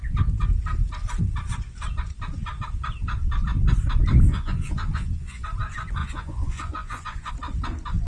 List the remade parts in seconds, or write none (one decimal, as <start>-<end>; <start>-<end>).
4.3-5.4; 6.0-7.3